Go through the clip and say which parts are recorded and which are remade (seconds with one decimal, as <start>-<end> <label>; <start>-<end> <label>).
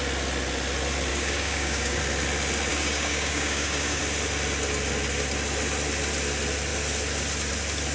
0.0-1.1 recorded; 1.1-2.0 remade; 2.0-2.7 recorded; 2.7-4.0 remade; 4.0-7.9 recorded